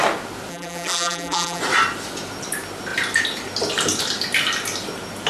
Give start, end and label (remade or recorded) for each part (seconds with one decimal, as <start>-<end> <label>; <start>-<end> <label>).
0.0-0.5 recorded; 0.5-1.6 remade; 1.6-5.3 recorded